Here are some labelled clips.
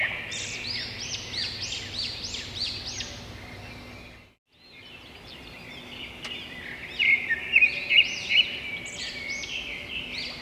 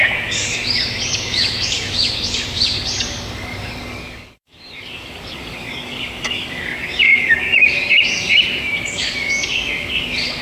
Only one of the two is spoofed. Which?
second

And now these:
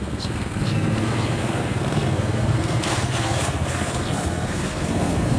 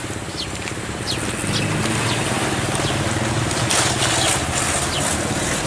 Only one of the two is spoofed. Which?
first